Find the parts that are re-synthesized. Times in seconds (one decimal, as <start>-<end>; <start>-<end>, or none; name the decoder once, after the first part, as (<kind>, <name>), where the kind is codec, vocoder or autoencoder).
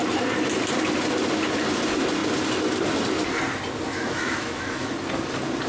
3.9-4.9 (autoencoder, DAC-VAE)